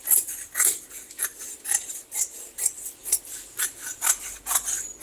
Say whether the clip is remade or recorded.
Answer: recorded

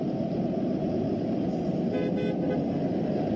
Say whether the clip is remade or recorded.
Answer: recorded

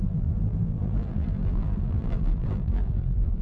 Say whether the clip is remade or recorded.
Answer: remade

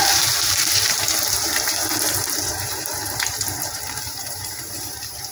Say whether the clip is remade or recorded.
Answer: remade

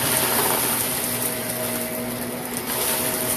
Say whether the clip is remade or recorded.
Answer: recorded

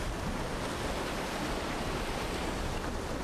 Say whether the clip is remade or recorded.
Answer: recorded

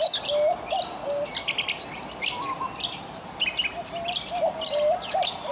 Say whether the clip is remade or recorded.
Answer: recorded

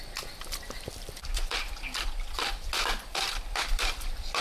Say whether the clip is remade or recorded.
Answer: remade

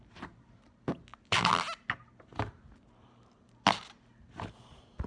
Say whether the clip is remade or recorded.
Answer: recorded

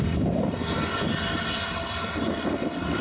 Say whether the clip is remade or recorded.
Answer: recorded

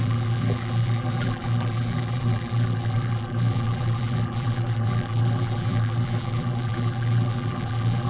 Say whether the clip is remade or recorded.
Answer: remade